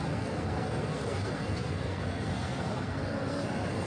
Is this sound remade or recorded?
remade